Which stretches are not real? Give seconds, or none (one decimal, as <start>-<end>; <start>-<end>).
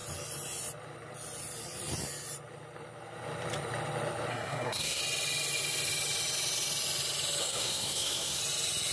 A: 4.3-5.0; 7.4-8.4